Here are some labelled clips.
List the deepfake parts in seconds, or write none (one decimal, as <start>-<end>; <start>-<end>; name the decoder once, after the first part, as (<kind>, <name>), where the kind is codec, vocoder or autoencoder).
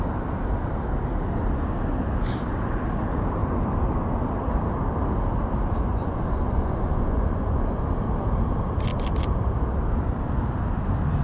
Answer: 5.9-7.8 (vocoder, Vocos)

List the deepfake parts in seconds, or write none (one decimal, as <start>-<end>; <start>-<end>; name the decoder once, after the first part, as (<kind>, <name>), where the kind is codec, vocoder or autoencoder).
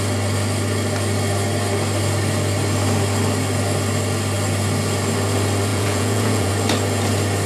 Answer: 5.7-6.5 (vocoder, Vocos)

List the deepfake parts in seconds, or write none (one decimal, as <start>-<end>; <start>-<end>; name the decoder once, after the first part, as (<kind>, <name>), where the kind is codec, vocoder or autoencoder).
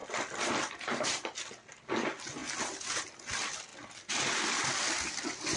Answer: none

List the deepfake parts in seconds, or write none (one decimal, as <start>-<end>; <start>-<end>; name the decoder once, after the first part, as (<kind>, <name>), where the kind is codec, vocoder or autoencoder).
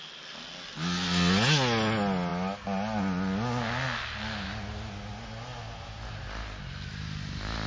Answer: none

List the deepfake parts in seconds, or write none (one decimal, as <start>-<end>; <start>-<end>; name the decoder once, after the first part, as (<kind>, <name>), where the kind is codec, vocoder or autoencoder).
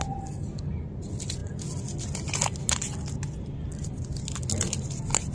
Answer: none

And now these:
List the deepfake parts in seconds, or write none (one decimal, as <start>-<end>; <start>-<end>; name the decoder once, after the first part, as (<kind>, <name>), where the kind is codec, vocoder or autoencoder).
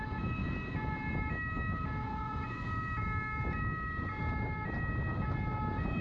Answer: 2.0-2.6 (vocoder, Vocos)